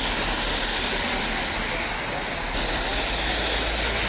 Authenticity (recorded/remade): recorded